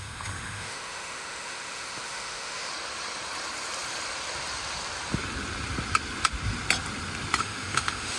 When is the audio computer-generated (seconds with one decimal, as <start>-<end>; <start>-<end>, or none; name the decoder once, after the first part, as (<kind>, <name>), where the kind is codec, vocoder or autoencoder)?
0.0-2.7 (autoencoder, DAC-VAE); 7.4-8.2

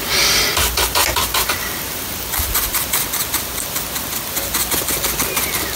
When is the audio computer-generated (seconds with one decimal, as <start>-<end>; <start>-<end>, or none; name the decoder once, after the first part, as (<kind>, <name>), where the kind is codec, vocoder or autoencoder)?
none

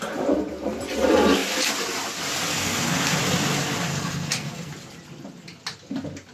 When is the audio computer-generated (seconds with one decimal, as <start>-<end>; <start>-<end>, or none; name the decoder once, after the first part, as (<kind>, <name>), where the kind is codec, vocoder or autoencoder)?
2.5-3.2 (codec, SNAC); 3.9-4.7